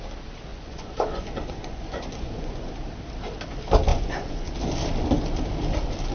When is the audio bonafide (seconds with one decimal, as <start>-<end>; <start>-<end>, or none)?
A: 0.0-0.5; 2.7-3.9; 4.5-6.1